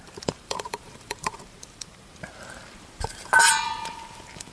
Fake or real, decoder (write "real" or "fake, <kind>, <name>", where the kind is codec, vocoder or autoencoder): fake, vocoder, BigVGAN v2